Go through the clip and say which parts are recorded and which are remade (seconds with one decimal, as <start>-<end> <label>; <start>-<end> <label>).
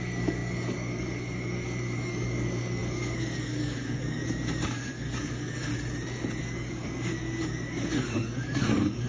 0.0-5.7 remade; 5.7-6.4 recorded; 6.4-9.1 remade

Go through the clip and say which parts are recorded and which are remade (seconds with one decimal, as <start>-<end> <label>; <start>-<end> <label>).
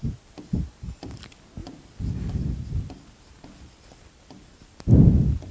0.0-5.5 recorded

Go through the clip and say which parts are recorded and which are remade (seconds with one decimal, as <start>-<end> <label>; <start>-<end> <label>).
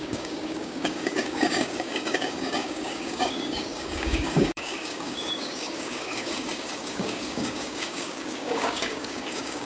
0.0-9.7 remade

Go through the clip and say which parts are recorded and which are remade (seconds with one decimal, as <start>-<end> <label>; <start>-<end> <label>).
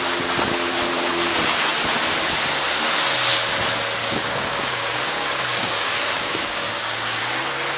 0.0-4.0 recorded; 4.0-7.2 remade; 7.2-7.8 recorded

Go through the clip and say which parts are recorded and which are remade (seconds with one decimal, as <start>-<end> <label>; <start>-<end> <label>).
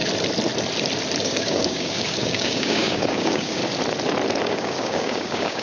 0.0-1.2 recorded; 1.2-3.6 remade; 3.6-4.4 recorded; 4.4-5.6 remade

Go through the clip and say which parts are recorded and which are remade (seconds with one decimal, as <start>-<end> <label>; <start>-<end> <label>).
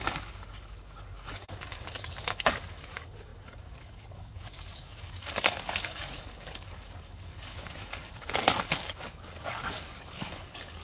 0.0-10.8 remade